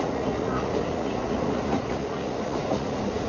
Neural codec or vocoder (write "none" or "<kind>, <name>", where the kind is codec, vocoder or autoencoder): vocoder, Vocos